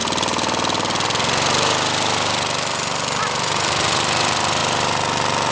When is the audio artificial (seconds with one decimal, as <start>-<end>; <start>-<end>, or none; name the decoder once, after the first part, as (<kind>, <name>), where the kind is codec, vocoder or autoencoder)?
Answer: 3.2-4.6 (vocoder, BigVGAN v2)